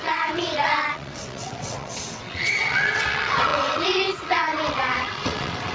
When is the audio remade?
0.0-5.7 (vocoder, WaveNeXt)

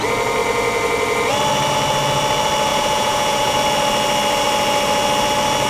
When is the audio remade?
2.7-3.6 (vocoder, Vocos)

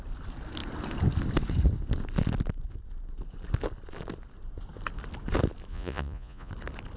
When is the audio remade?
5.7-6.5 (vocoder, Vocos)

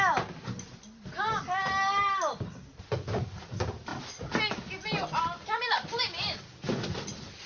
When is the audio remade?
none

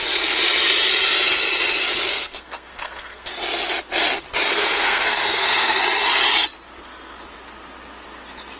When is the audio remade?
2.1-3.3 (codec, SNAC); 4.5-5.8

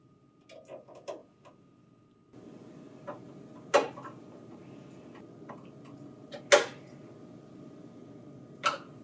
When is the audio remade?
none

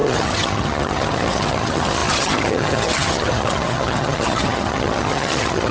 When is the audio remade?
0.0-5.7 (vocoder, HiFi-GAN)

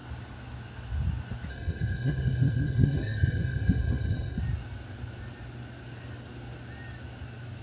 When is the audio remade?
1.5-4.4 (codec, SNAC)